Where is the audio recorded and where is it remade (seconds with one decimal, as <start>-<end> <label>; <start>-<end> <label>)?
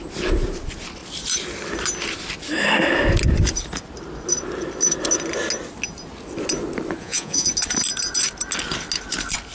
0.0-7.0 recorded; 7.0-7.5 remade; 7.5-9.5 recorded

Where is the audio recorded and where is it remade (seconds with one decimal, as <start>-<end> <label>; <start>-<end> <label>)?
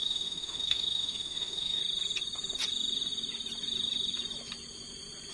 0.0-1.8 remade; 1.8-5.3 recorded